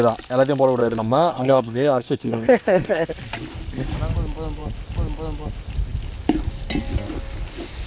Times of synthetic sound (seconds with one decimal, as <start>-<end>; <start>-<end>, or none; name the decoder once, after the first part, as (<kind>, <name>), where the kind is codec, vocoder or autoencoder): 0.8-3.1 (codec, SNAC)